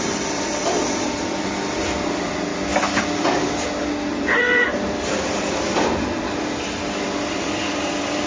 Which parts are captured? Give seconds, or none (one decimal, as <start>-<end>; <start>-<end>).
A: 2.5-4.2